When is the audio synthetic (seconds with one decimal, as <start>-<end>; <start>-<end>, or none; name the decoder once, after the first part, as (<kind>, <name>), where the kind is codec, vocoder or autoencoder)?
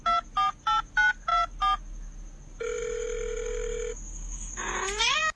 none